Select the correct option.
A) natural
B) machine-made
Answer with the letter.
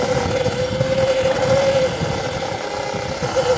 A